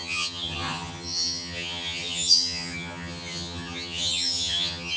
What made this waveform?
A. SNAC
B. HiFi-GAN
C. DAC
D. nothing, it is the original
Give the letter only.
B